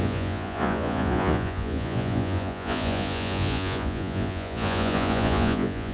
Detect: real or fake fake